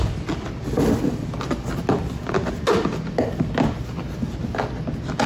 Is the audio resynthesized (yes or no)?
no